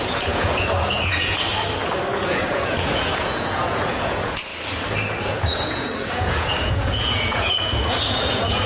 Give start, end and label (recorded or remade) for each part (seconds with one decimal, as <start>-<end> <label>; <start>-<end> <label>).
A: 0.0-1.5 remade; 1.5-2.1 recorded; 2.1-4.5 remade; 4.5-5.2 recorded; 5.2-8.7 remade